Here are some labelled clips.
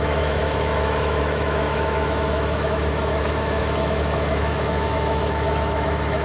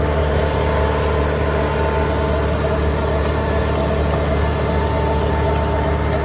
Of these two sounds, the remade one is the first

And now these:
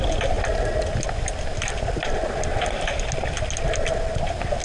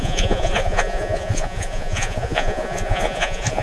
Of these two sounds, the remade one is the second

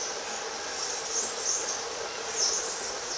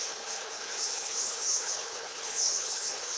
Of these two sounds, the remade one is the second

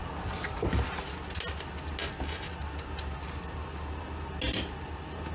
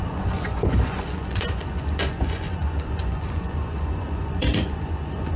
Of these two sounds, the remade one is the second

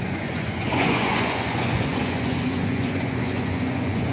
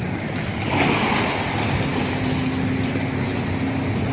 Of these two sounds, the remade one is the first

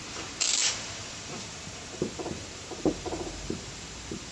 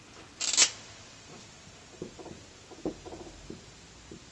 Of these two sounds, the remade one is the first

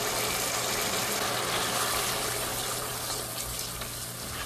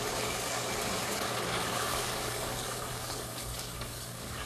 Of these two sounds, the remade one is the second